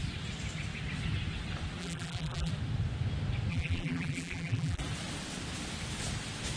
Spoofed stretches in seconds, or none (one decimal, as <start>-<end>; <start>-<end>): 1.8-2.5; 3.5-4.8